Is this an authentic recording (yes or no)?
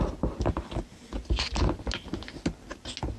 yes